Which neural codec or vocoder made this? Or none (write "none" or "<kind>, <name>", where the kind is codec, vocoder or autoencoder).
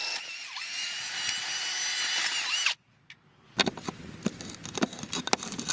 none